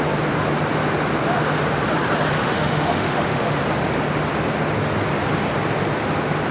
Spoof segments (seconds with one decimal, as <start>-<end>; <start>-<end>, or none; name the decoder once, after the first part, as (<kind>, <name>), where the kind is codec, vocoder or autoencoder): 2.4-3.6 (autoencoder, DAC-VAE)